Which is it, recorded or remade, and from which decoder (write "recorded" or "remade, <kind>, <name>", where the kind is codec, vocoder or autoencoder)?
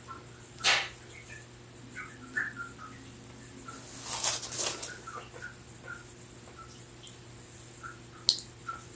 recorded